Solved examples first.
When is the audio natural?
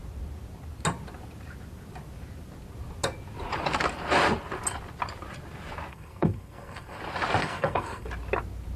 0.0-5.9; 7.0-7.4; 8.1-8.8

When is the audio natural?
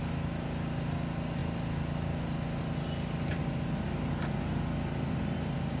0.0-5.8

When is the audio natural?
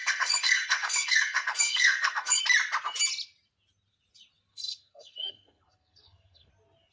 2.4-4.5; 6.5-6.9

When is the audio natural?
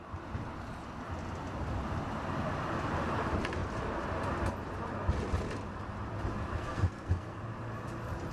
0.0-6.5; 7.4-8.3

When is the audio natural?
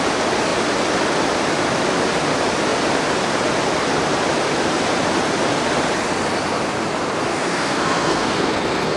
0.0-7.3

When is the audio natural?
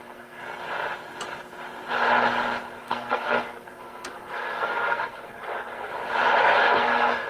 0.4-2.8; 5.9-6.4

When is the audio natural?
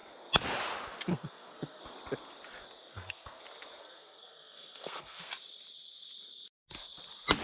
0.0-1.1; 1.8-2.9; 3.4-3.8; 5.3-7.4